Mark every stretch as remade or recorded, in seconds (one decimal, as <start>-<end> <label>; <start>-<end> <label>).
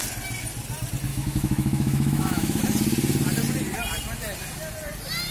0.0-1.1 recorded; 1.1-2.6 remade; 2.6-5.3 recorded